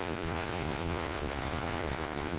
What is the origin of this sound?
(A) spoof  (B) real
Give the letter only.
A